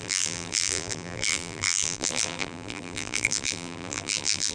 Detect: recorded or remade remade